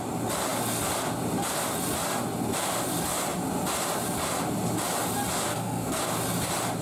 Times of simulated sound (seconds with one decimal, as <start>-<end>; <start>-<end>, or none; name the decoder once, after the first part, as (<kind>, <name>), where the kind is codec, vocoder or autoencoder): 5.5-6.0 (codec, SNAC)

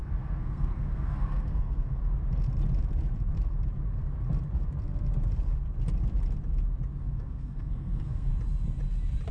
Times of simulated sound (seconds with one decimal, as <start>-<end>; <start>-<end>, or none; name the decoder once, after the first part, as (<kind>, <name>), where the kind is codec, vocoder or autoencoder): 0.0-2.0 (codec, SNAC); 7.0-8.3